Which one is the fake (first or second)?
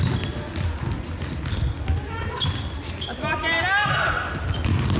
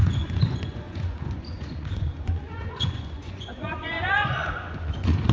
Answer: second